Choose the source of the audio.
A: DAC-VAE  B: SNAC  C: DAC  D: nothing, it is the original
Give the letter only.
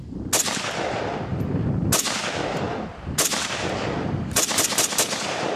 D